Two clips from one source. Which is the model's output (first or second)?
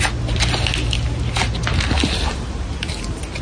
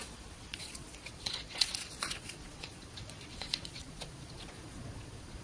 second